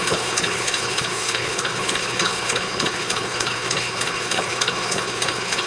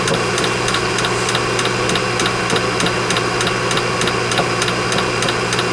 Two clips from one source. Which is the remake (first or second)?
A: first